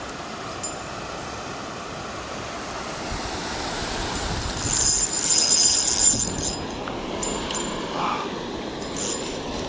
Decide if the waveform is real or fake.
real